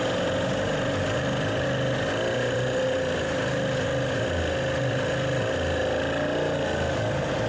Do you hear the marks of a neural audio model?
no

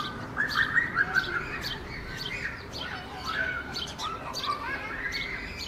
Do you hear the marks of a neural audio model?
yes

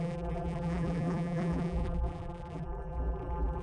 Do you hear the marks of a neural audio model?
yes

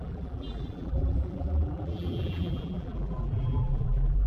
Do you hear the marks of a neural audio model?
yes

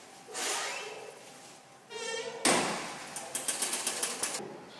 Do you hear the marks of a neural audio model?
no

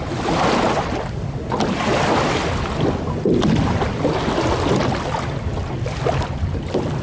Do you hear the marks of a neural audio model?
no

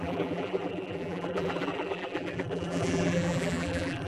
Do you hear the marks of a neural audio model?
yes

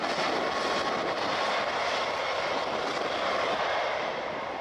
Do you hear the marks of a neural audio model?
no